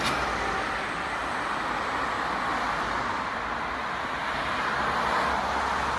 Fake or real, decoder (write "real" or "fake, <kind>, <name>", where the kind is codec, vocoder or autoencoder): real